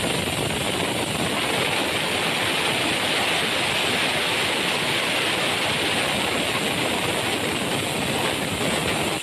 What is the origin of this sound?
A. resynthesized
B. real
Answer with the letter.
B